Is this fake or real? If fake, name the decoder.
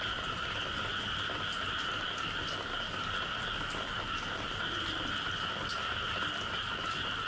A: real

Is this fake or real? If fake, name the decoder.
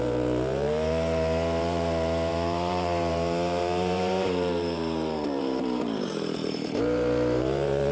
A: fake, vocoder, BigVGAN v2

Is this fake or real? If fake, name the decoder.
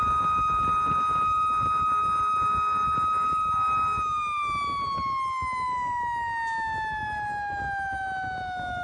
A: real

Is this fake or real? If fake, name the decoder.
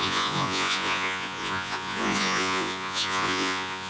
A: fake, vocoder, Vocos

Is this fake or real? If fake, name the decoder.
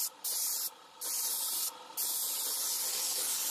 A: real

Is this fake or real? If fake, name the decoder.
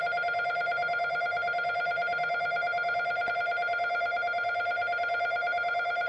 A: fake, vocoder, BigVGAN v2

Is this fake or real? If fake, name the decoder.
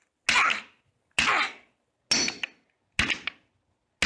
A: real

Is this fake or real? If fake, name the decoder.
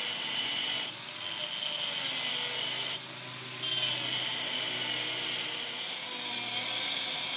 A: real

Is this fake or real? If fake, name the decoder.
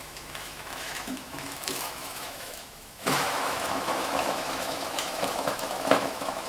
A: fake, autoencoder, DAC-VAE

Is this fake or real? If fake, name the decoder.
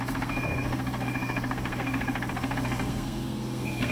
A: fake, codec, SNAC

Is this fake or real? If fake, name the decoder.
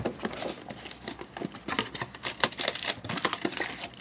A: real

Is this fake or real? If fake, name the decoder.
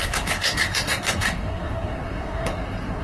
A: fake, codec, SNAC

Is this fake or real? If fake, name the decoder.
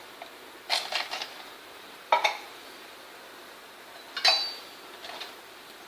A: real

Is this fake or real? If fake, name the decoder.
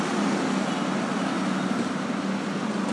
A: real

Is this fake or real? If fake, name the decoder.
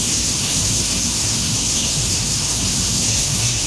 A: fake, codec, SNAC